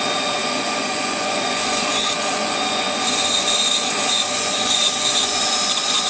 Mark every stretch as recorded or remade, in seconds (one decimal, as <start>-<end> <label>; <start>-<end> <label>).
0.0-6.1 remade